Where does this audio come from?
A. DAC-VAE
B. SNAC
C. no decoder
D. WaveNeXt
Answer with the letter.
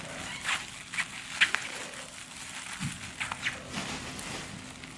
C